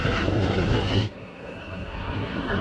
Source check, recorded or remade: remade